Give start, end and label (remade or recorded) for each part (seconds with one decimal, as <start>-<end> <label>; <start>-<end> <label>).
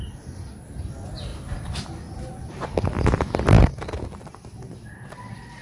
0.0-5.6 recorded